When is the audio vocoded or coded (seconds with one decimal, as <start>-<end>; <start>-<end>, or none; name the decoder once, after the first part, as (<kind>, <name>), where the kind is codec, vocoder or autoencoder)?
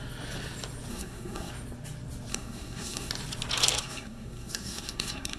0.9-1.5 (codec, SNAC); 2.3-3.1; 3.8-5.4